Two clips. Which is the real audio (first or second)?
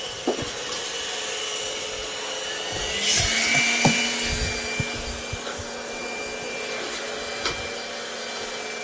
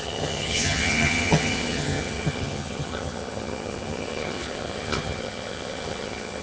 first